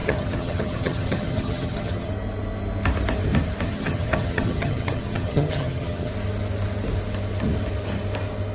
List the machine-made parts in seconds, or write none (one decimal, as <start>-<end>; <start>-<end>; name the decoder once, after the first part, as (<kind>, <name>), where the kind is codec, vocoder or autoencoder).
0.0-2.1 (vocoder, HiFi-GAN); 3.7-6.1